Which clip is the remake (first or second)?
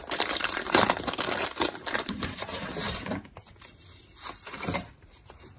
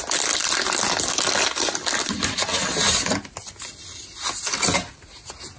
first